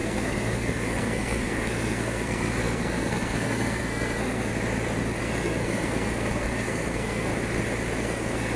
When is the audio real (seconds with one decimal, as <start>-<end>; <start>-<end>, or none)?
4.5-5.2; 7.3-8.0